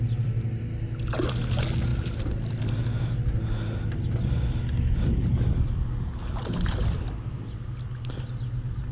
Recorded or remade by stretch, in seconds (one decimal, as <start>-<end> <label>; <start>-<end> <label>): 0.0-8.9 recorded